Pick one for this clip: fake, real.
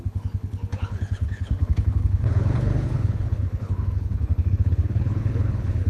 fake